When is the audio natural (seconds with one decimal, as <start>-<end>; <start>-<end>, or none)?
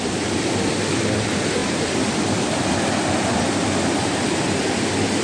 0.0-5.2